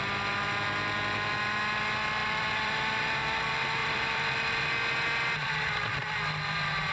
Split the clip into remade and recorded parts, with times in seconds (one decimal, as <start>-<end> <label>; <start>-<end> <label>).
0.0-2.2 recorded; 2.2-2.7 remade; 2.7-3.8 recorded; 3.8-4.7 remade; 4.7-6.9 recorded